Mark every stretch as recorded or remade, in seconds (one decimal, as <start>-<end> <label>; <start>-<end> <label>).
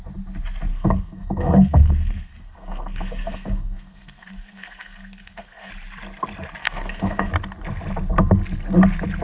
0.0-0.7 recorded; 0.7-5.7 remade; 5.7-6.6 recorded; 6.6-7.3 remade; 7.3-9.2 recorded